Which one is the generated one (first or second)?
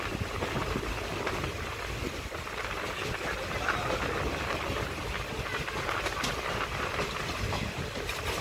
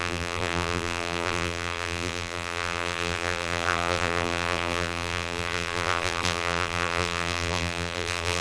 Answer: second